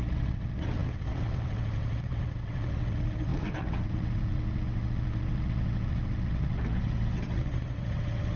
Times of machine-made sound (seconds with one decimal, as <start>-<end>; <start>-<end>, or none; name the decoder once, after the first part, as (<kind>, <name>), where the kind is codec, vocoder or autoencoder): 0.0-8.4 (vocoder, WaveNeXt)

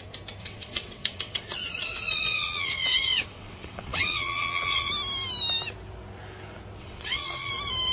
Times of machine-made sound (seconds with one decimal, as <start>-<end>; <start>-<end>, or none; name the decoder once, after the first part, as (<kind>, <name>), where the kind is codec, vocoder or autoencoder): 0.4-4.9 (vocoder, WaveNeXt); 6.8-7.5

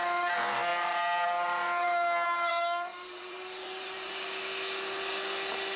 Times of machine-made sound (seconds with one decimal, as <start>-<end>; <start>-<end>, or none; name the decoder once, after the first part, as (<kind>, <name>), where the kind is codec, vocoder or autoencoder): 0.7-2.5 (vocoder, BigVGAN v2); 2.9-4.2

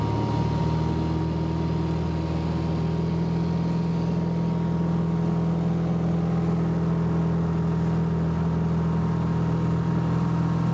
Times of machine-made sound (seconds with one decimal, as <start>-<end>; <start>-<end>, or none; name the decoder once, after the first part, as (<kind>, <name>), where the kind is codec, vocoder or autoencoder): none

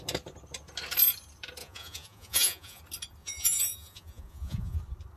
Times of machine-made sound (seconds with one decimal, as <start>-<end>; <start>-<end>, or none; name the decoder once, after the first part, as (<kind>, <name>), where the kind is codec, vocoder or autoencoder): 1.6-2.8 (vocoder, Vocos); 3.2-4.8

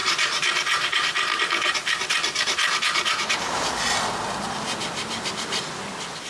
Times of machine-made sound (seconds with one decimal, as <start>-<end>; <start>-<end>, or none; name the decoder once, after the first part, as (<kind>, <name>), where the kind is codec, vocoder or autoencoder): 0.0-3.7 (vocoder, BigVGAN v2)

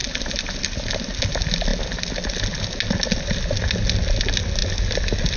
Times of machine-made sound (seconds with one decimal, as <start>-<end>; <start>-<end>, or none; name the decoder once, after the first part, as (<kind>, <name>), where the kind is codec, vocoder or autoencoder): none